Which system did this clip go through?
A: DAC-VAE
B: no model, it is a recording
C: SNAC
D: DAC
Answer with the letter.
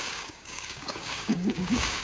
D